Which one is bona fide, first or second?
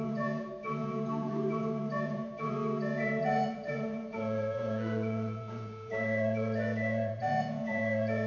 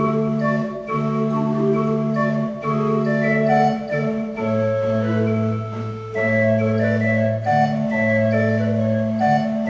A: second